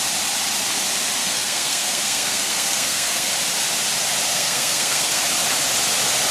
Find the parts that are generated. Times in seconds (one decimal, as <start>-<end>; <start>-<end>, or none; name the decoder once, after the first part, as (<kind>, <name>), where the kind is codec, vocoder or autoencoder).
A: 1.2-3.3 (codec, SNAC); 4.3-5.2